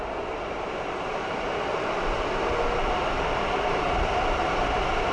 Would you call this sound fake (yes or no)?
yes